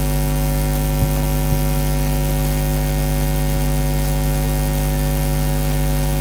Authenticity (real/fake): real